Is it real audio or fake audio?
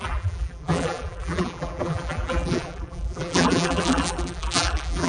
fake